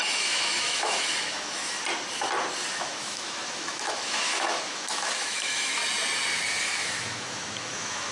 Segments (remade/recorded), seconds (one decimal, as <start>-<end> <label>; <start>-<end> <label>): 0.0-1.6 remade; 1.6-2.7 recorded; 2.7-5.8 remade; 5.8-6.6 recorded; 6.6-8.1 remade